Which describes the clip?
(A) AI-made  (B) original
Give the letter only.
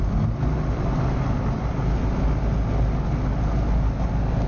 B